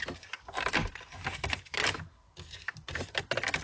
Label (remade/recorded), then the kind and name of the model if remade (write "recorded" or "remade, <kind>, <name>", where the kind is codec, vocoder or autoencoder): recorded